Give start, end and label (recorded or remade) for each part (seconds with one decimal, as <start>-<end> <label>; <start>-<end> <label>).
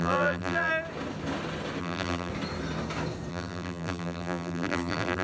0.0-0.7 remade; 0.7-1.8 recorded; 1.8-2.3 remade; 2.3-3.3 recorded; 3.3-5.2 remade